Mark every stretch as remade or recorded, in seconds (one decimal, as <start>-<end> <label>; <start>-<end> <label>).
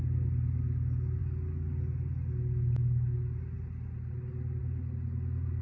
0.0-5.6 recorded